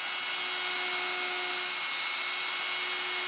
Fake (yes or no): no